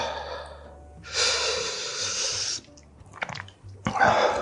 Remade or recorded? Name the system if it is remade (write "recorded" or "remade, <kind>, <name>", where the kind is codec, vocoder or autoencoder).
recorded